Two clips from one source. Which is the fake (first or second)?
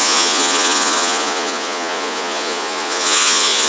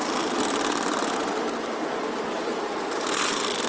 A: first